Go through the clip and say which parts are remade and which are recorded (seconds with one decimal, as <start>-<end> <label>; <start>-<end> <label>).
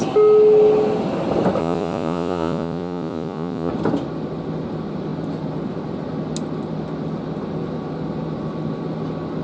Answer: 0.0-1.6 recorded; 1.6-3.7 remade; 3.7-9.4 recorded